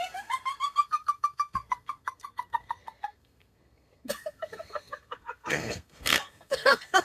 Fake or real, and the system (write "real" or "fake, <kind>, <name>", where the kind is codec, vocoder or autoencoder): fake, codec, SNAC